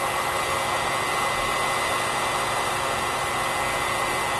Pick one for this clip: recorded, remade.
recorded